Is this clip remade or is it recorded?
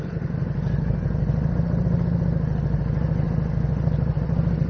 recorded